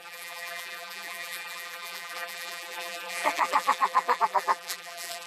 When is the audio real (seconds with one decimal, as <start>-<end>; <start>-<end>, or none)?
none